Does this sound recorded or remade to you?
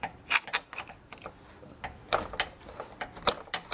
recorded